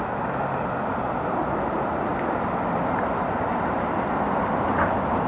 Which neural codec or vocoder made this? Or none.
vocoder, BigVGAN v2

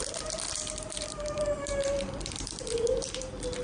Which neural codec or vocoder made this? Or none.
vocoder, BigVGAN v2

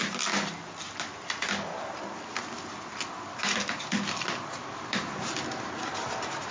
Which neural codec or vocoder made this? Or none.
none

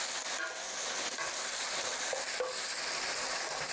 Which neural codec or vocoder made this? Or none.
vocoder, BigVGAN v2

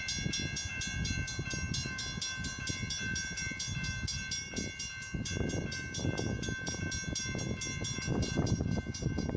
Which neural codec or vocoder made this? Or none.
none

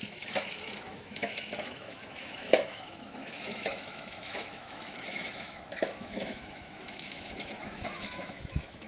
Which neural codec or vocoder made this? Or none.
autoencoder, DAC-VAE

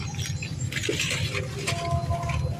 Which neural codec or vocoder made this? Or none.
none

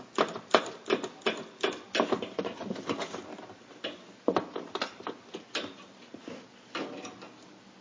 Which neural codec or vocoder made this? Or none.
none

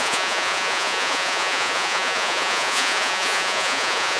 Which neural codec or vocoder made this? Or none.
vocoder, Vocos